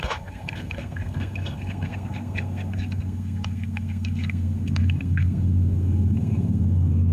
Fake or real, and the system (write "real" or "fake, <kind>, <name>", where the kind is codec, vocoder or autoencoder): fake, codec, SNAC